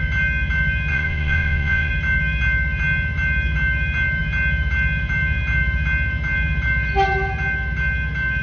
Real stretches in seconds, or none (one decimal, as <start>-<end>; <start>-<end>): 0.0-0.9; 1.9-8.4